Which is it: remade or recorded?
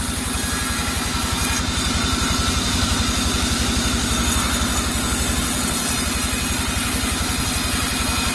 recorded